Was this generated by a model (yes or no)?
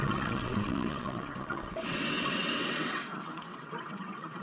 yes